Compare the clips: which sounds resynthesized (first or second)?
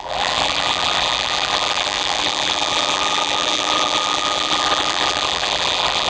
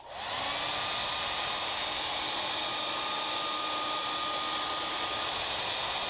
first